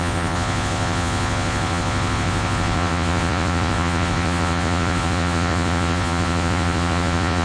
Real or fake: fake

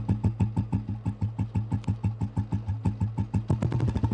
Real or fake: real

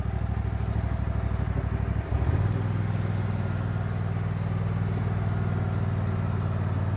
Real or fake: real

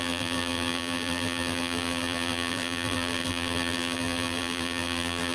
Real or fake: fake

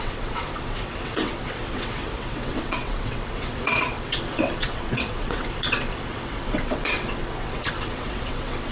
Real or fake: fake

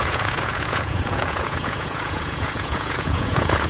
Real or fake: fake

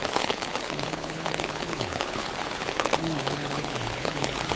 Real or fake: fake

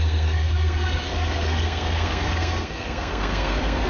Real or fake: fake